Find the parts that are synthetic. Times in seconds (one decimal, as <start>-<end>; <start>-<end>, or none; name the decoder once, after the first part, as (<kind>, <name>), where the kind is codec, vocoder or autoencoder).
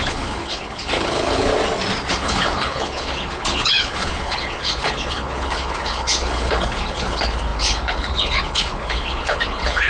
0.0-1.5 (codec, HILCodec); 2.1-9.9